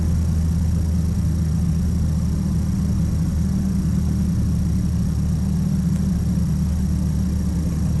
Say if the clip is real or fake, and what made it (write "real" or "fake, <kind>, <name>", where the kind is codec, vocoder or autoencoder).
real